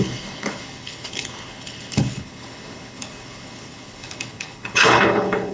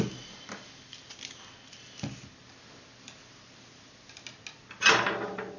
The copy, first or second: first